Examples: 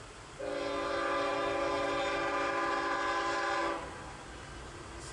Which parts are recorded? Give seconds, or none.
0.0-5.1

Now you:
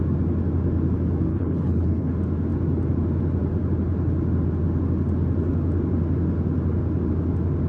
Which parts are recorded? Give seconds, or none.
0.0-1.3; 2.1-7.7

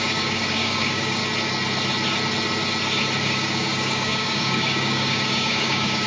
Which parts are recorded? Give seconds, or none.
1.2-3.2

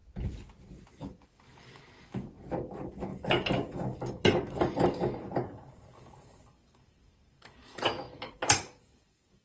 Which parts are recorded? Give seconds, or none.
0.0-0.9